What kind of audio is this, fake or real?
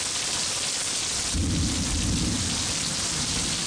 real